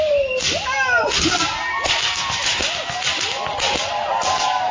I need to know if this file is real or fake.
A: real